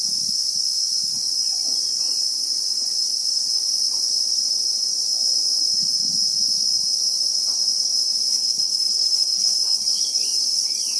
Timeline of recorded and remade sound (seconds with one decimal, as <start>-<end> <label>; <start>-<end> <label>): 0.0-8.3 recorded; 8.3-11.0 remade